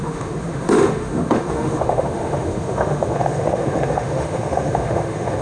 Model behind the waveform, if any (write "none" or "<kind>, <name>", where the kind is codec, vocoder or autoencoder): autoencoder, DAC-VAE